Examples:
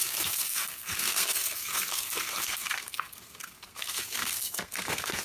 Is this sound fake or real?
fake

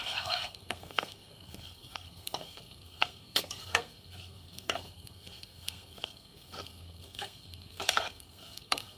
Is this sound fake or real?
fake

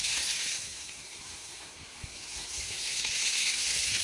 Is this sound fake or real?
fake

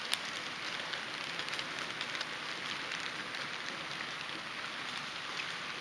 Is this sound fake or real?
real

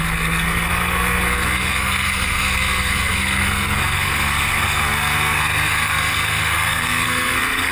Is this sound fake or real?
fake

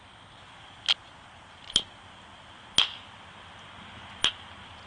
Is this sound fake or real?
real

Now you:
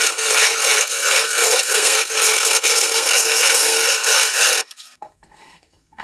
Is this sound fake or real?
fake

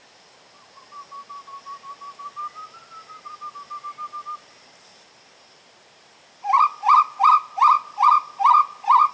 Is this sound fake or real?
real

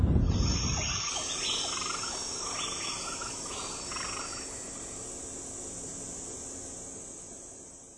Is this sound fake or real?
real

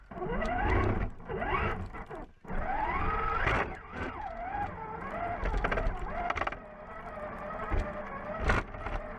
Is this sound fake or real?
real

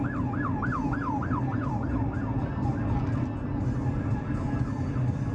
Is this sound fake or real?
real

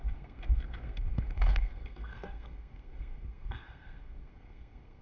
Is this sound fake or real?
fake